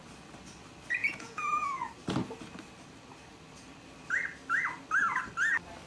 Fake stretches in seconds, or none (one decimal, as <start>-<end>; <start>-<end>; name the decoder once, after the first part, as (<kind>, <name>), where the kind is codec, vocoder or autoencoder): 1.0-1.9 (vocoder, Vocos)